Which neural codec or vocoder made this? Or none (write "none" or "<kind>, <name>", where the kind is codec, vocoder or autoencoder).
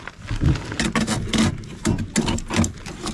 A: none